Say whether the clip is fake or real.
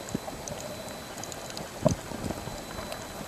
real